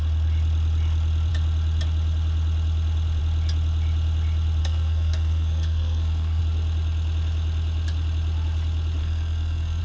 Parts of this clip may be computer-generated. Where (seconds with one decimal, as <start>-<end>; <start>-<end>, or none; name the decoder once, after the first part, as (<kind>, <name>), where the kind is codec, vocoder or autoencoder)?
4.6-6.4 (codec, SNAC); 9.0-9.8